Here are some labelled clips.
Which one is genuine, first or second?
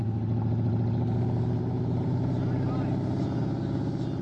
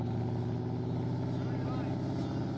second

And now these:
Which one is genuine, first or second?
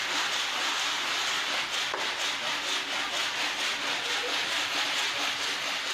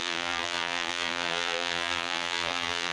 first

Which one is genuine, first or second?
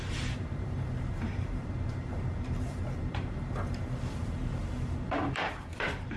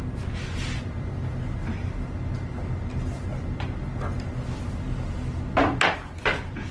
second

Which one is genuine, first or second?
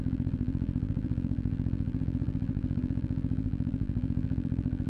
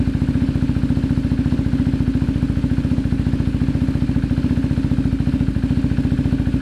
second